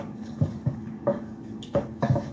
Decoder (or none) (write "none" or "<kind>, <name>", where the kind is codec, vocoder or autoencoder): codec, DAC